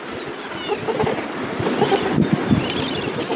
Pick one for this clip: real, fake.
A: real